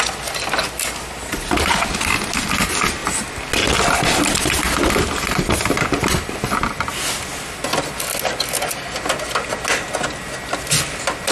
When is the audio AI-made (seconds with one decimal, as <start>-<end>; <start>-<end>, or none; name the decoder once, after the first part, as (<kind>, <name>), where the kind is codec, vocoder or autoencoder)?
none